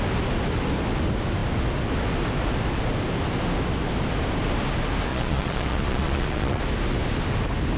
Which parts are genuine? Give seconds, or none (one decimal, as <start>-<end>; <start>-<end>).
0.0-5.1; 6.6-7.8

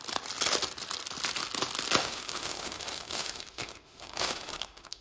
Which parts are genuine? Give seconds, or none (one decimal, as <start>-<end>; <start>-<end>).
0.0-2.0